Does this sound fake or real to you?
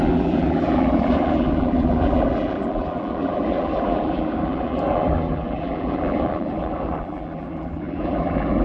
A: fake